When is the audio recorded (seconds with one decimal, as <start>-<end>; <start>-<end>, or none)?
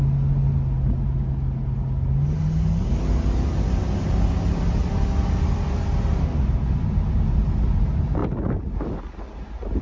0.0-9.8